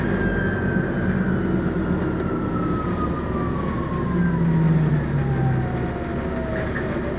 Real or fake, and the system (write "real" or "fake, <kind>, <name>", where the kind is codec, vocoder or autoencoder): real